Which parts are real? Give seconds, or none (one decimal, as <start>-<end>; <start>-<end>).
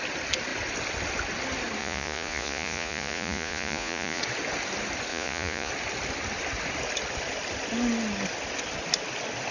0.0-1.8; 4.2-5.1; 5.7-9.5